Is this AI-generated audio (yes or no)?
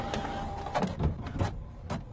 no